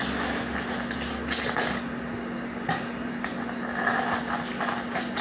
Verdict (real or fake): real